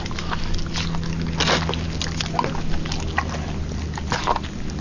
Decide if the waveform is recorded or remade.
recorded